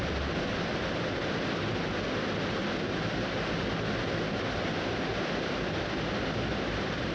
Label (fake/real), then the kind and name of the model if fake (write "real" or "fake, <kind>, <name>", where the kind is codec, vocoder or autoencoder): real